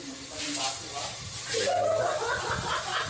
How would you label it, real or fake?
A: real